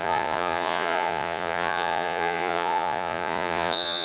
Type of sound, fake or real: fake